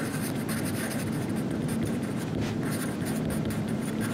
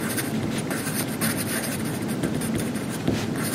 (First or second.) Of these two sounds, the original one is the first